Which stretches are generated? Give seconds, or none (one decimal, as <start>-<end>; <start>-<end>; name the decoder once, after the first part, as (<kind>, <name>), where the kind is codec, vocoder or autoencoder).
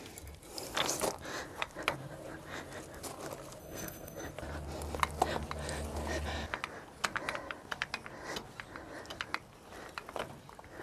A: 3.6-4.3 (codec, SNAC)